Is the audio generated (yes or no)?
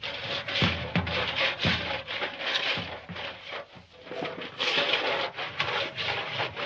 no